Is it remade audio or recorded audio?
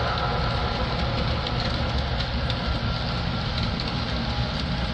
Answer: recorded